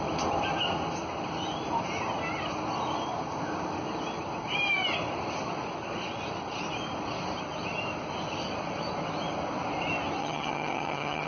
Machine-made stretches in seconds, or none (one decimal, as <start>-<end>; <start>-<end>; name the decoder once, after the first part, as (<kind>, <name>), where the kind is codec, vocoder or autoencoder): 10.2-11.3 (vocoder, HiFi-GAN)